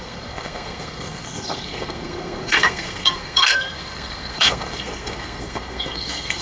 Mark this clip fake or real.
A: fake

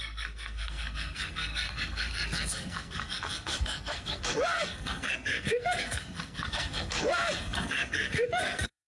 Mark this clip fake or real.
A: fake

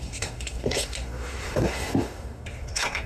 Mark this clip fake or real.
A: fake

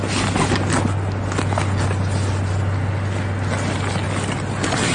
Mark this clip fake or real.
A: real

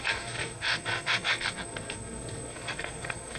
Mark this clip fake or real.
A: fake